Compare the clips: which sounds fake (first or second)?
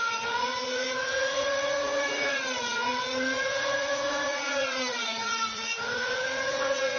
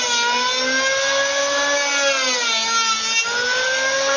first